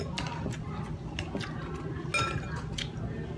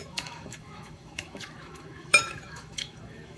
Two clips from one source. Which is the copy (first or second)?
second